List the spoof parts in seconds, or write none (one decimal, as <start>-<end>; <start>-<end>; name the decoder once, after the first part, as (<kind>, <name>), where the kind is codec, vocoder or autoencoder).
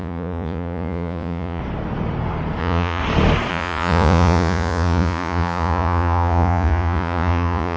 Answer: 0.0-1.6 (vocoder, Vocos); 2.6-3.0; 3.5-7.8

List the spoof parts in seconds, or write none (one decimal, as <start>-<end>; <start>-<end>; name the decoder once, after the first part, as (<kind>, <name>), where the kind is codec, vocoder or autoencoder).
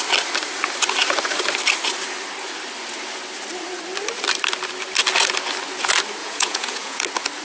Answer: 6.2-7.0 (vocoder, Vocos)